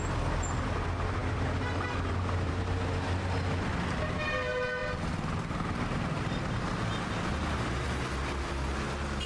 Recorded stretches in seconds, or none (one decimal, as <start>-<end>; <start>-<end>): 0.0-4.8; 6.6-9.3